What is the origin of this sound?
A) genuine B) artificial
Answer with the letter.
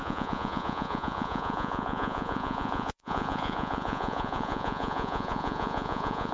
B